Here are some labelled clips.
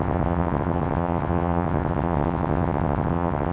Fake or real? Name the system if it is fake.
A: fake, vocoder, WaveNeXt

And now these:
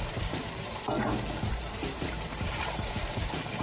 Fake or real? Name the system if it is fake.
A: fake, vocoder, BigVGAN v2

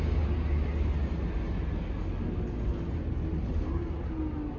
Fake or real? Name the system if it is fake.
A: real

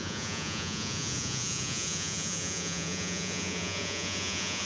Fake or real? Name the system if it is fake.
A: fake, vocoder, Vocos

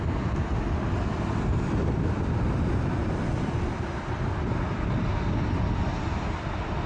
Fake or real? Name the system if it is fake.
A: real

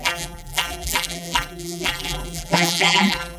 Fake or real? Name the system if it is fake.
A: fake, vocoder, BigVGAN v2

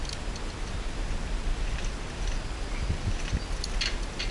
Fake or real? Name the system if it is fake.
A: real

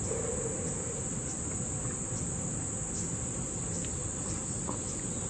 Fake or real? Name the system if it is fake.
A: real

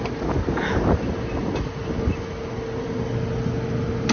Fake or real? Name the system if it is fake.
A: real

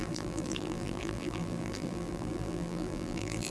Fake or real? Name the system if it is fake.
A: fake, vocoder, BigVGAN v2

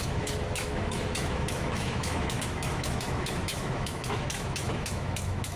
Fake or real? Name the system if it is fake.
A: fake, autoencoder, DAC-VAE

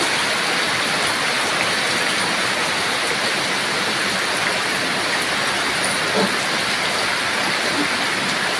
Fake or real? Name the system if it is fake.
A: real